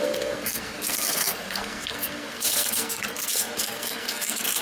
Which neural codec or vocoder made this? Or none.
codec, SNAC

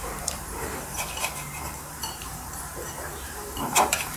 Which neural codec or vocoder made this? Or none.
vocoder, BigVGAN v2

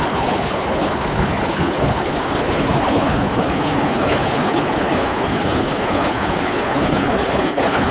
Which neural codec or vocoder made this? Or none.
codec, HILCodec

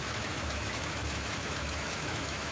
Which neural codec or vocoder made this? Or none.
autoencoder, DAC-VAE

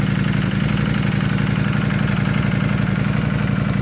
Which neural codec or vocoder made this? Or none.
none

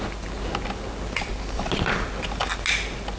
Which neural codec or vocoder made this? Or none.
none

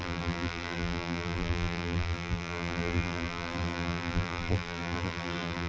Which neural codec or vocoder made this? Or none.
vocoder, BigVGAN v2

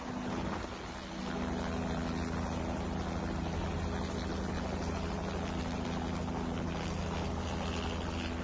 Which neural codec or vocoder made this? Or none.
none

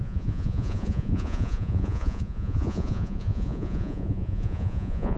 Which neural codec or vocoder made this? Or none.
vocoder, Vocos